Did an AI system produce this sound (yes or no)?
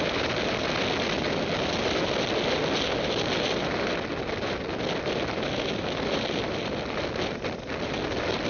no